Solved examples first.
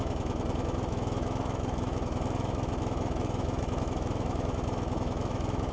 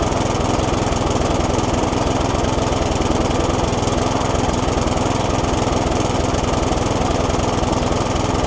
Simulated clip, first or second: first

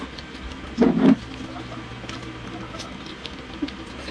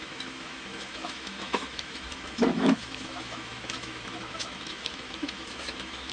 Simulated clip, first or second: second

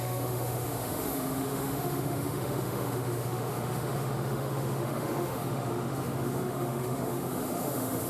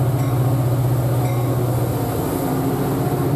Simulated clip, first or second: first